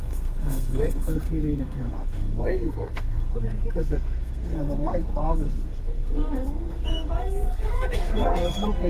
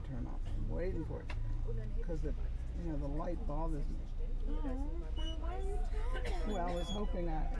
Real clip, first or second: second